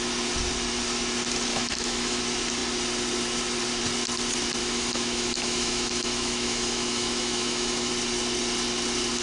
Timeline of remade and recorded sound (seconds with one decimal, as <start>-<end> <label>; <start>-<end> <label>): 0.0-1.5 recorded; 1.5-2.2 remade; 2.2-4.6 recorded; 4.6-7.9 remade; 7.9-9.2 recorded